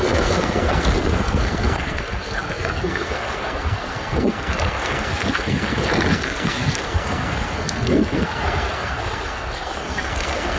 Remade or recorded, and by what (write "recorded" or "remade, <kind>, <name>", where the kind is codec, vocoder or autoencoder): remade, codec, SNAC